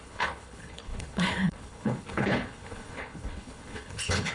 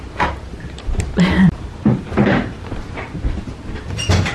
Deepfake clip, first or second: first